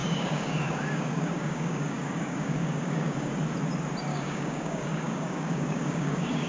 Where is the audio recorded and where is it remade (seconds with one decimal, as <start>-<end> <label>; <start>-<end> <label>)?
0.0-3.3 remade; 3.3-4.1 recorded; 4.1-6.5 remade